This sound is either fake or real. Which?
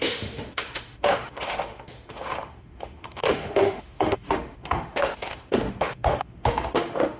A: fake